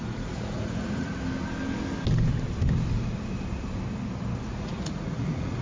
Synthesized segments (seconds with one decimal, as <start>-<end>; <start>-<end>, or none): 0.0-1.1; 4.5-5.6